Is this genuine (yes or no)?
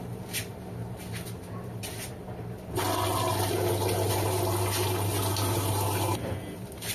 yes